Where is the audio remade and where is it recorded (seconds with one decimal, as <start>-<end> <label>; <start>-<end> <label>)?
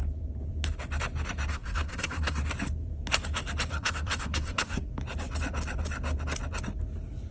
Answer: 0.0-1.5 recorded; 1.5-2.4 remade; 2.4-3.7 recorded; 3.7-4.9 remade; 4.9-7.3 recorded